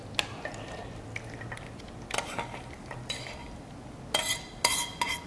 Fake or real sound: real